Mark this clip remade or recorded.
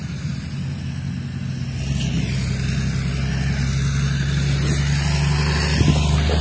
recorded